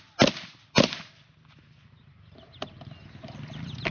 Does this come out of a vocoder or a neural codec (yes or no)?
no